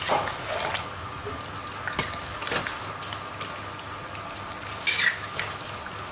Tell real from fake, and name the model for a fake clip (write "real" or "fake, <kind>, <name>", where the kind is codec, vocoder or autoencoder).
real